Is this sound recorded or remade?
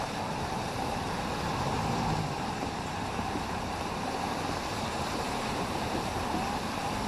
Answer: remade